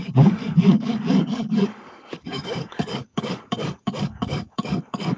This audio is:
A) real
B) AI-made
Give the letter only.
B